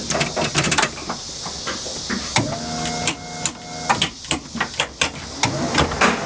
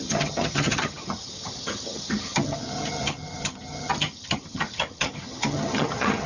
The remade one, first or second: second